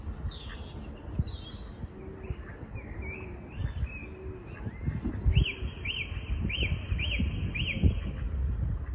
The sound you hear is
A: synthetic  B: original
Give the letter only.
B